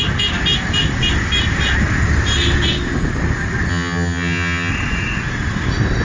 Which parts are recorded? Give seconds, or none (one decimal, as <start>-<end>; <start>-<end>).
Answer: 0.0-3.7; 4.7-6.0